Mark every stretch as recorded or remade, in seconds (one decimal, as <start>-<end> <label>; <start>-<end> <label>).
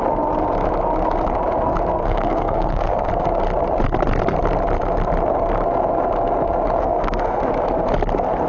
0.0-2.0 recorded; 2.0-3.1 remade; 3.1-6.8 recorded; 6.8-7.4 remade; 7.4-8.5 recorded